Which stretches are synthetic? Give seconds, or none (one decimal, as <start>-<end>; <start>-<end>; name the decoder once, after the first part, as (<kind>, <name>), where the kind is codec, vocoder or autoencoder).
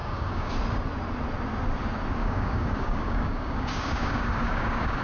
0.0-0.5 (codec, DAC); 2.2-5.0